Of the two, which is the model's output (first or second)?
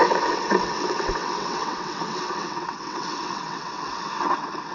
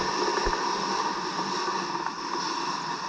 first